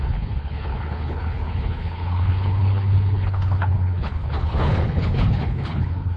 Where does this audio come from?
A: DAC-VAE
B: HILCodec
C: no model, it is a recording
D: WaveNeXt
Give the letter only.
B